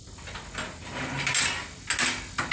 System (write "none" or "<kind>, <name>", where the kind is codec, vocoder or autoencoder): none